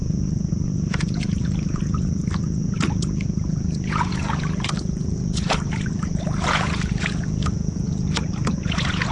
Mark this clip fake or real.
fake